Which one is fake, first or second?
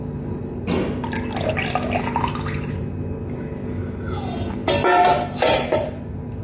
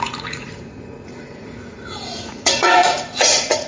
second